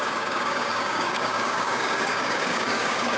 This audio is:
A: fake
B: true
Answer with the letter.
A